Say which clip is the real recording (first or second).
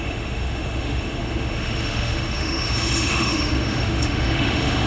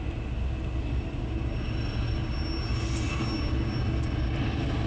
second